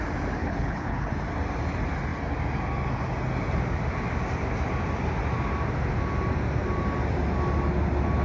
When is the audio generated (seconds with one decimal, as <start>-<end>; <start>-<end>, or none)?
0.4-1.1